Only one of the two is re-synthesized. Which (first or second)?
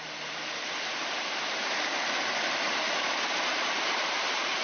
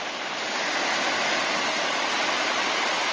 first